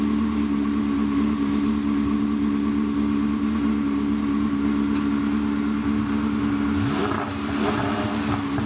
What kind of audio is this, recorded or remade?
recorded